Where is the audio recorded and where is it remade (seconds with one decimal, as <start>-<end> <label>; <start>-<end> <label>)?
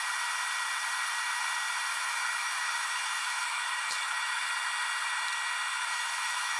0.0-1.9 recorded; 1.9-4.4 remade; 4.4-5.7 recorded; 5.7-6.6 remade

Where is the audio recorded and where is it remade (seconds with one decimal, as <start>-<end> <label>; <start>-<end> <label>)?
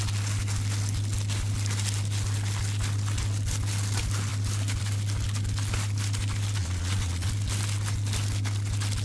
0.0-6.6 recorded; 6.6-7.3 remade; 7.3-9.0 recorded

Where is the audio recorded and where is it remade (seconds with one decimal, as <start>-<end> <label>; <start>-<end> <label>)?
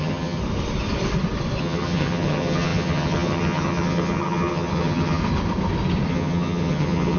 0.0-0.4 remade; 0.4-1.6 recorded; 1.6-5.2 remade; 5.2-6.1 recorded; 6.1-7.2 remade